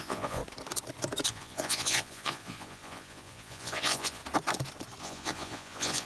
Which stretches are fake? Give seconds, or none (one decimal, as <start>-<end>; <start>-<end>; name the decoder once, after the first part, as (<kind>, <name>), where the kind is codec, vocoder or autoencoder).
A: 0.0-0.4 (vocoder, Vocos); 1.3-4.2; 5.0-6.1